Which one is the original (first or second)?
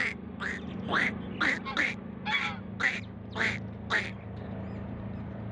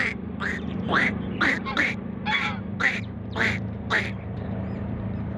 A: first